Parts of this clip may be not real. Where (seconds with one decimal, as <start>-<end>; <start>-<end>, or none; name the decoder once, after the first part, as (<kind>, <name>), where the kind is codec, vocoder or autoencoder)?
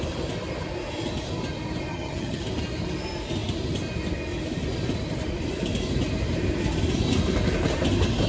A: 1.9-2.4 (vocoder, HiFi-GAN)